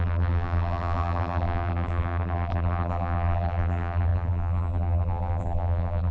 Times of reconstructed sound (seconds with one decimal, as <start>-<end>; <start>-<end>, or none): 0.0-6.1